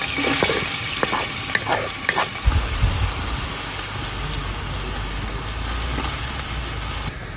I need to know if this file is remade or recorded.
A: recorded